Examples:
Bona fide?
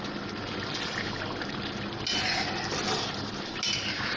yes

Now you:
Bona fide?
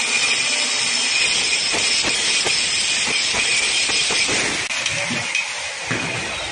yes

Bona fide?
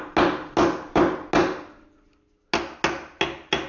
yes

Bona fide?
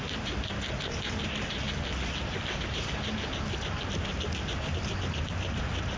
yes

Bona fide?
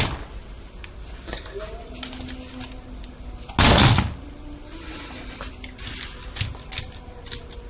yes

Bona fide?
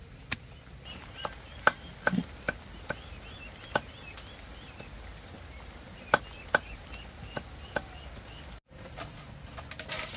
yes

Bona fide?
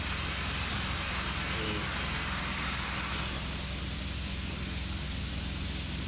yes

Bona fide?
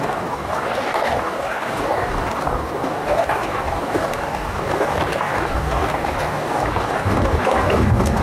no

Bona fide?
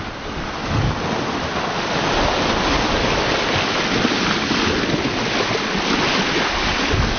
yes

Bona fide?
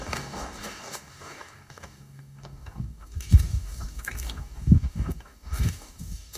no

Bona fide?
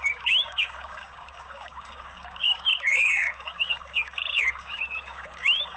no